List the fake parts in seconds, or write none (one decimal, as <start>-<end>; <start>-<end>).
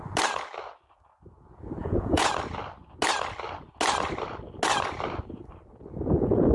1.8-2.3